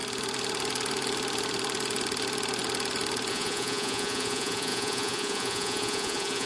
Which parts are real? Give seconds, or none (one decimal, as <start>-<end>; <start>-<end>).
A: 0.0-3.3